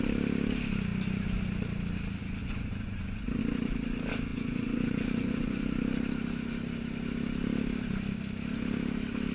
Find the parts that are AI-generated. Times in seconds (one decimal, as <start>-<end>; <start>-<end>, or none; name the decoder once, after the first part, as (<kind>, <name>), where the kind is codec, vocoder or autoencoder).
2.4-3.4 (vocoder, Vocos); 4.3-5.6